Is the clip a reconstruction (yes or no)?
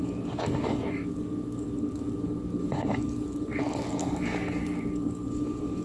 yes